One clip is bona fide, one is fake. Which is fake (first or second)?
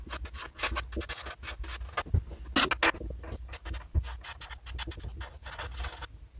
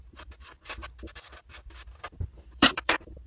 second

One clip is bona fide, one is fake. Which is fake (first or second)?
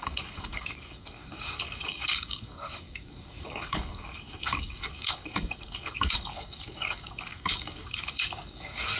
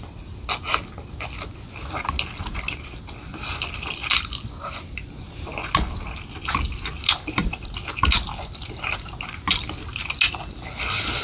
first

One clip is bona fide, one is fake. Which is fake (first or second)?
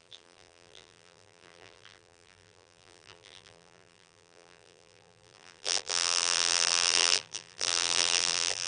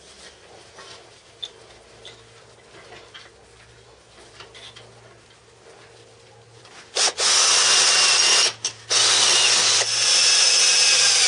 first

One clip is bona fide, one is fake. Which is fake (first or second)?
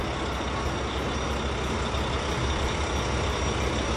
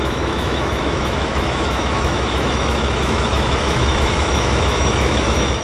second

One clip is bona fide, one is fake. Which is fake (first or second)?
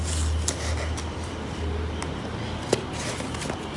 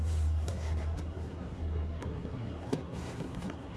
second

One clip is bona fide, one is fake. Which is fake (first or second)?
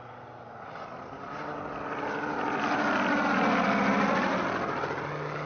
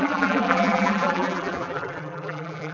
second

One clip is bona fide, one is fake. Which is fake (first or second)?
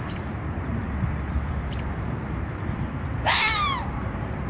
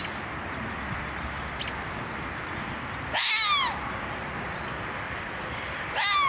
first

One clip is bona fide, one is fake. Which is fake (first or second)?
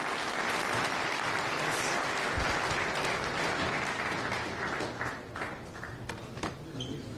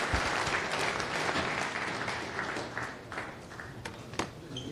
second